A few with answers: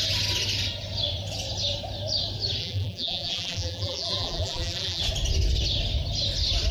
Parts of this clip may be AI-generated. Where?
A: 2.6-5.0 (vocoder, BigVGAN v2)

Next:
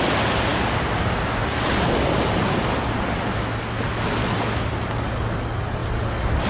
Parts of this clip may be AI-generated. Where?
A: none